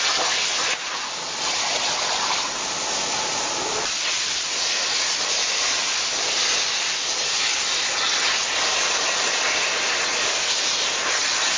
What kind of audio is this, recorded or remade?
recorded